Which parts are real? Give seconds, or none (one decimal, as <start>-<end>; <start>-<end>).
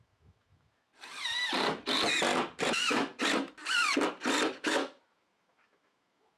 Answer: 0.9-2.7; 3.1-4.6